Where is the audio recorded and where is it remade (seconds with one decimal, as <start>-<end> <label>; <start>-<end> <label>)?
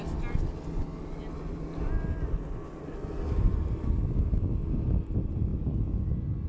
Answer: 0.0-6.5 recorded